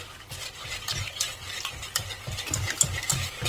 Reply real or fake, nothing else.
real